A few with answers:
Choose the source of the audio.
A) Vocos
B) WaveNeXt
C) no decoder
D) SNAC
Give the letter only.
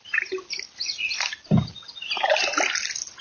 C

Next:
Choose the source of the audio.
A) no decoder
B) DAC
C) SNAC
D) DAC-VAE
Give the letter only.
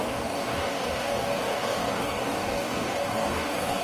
B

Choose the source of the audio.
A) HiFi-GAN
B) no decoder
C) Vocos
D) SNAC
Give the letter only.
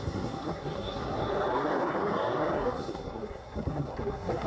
D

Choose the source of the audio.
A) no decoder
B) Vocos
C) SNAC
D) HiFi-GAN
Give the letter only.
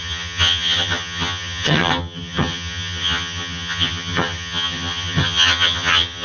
D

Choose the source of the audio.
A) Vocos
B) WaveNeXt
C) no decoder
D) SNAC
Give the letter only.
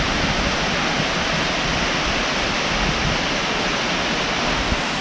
C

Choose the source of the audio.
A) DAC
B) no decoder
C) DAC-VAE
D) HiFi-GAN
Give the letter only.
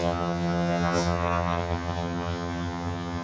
D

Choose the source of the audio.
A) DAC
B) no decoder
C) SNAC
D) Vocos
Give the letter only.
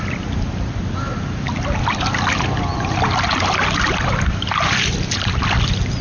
B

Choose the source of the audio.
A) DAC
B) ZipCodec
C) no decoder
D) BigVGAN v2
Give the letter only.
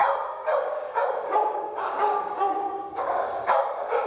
A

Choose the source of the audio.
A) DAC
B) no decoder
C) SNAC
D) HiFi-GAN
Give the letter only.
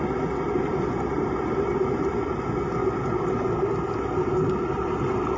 B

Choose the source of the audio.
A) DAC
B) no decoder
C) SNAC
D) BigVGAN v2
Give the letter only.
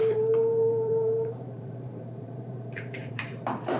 D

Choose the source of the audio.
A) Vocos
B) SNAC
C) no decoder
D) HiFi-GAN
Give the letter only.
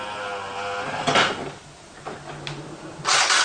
C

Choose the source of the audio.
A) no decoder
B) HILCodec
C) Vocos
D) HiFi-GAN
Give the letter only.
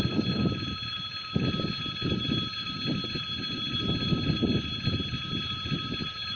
A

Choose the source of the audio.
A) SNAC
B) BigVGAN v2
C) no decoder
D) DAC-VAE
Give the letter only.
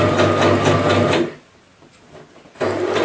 C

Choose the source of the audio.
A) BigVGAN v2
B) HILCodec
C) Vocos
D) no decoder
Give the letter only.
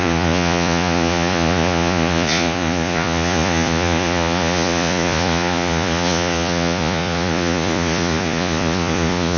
C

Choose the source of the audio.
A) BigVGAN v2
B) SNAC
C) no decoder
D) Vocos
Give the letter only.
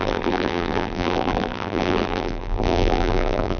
A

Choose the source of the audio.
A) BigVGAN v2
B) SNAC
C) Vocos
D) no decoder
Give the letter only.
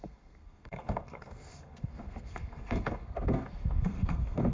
B